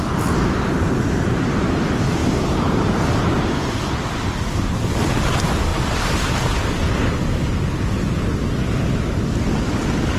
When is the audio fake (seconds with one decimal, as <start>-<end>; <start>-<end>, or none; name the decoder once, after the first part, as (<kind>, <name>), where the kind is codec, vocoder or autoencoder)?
5.7-6.3 (vocoder, BigVGAN v2)